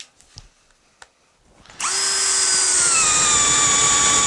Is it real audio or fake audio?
real